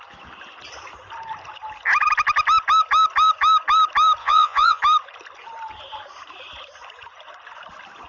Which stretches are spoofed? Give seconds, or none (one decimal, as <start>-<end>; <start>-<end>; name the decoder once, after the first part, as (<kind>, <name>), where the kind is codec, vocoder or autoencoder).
4.2-4.8 (vocoder, Vocos)